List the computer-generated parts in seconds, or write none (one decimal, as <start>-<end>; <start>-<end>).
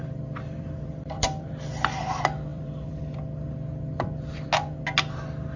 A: 0.0-1.7; 2.5-3.0